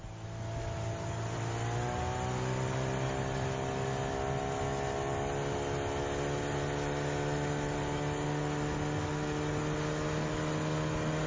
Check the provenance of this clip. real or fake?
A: real